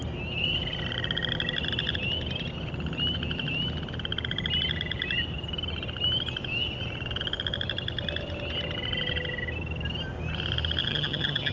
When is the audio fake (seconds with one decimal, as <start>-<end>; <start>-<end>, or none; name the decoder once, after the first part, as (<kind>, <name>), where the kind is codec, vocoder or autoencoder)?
10.8-11.5 (vocoder, HiFi-GAN)